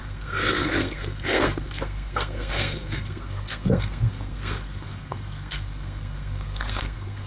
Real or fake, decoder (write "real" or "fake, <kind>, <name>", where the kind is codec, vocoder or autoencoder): fake, codec, SNAC